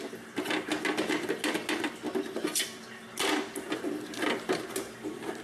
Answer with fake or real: real